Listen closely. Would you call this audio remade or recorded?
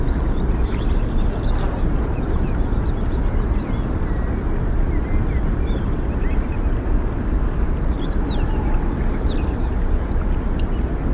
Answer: recorded